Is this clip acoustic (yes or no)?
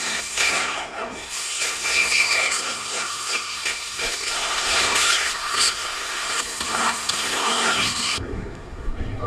no